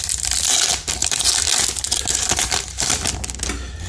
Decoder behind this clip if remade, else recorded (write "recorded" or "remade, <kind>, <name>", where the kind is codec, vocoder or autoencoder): recorded